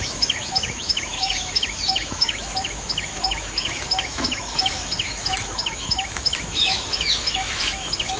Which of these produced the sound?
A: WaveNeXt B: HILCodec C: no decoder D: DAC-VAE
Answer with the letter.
D